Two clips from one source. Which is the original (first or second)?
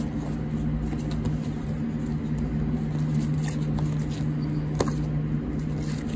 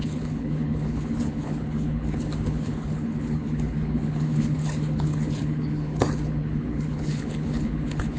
first